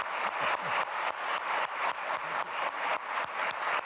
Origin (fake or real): real